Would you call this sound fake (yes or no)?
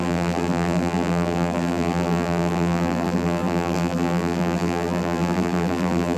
yes